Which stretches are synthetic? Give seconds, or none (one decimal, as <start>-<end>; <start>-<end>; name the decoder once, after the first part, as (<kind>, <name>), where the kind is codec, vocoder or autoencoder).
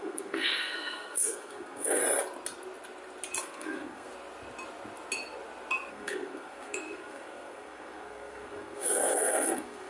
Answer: 0.0-2.0 (codec, SNAC); 3.4-4.1; 5.9-9.9